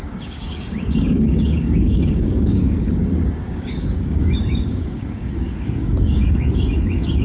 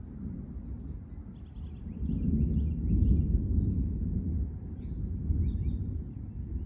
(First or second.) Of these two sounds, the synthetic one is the first